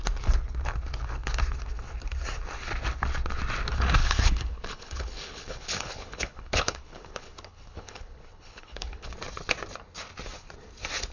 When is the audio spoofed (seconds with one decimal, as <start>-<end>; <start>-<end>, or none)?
4.0-9.1